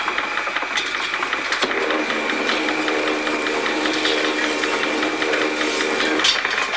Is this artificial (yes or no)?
no